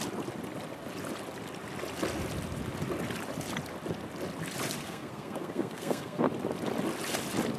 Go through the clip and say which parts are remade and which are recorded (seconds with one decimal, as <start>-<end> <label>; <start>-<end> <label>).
0.0-4.8 recorded; 4.8-6.3 remade; 6.3-7.6 recorded